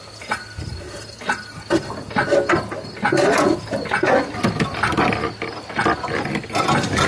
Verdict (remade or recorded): recorded